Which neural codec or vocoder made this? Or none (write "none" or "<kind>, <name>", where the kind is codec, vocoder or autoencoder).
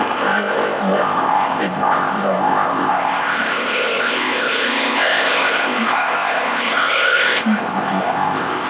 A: codec, ZipCodec